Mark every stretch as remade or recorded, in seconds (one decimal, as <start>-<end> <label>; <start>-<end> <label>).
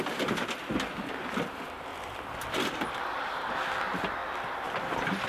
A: 0.0-1.9 recorded; 1.9-3.2 remade; 3.2-5.3 recorded